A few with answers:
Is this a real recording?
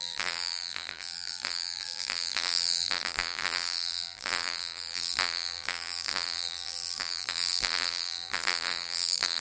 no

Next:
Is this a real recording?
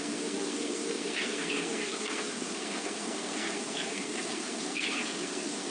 no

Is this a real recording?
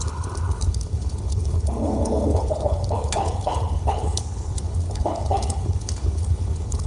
no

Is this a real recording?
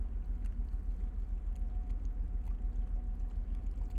yes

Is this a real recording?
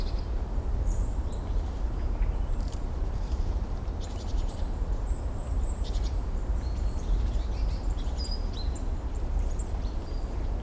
no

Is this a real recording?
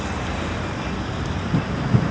yes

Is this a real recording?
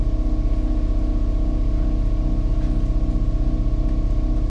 yes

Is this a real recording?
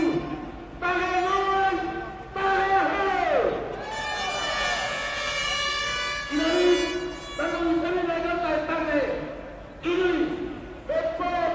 yes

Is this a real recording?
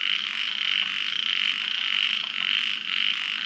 yes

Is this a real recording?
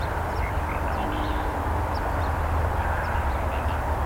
yes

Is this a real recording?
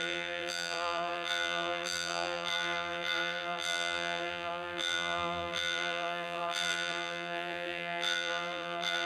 no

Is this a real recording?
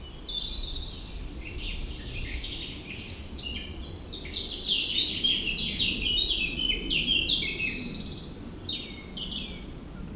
yes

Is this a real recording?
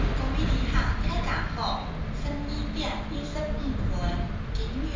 yes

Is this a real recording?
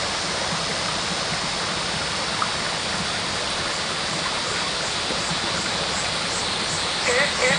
yes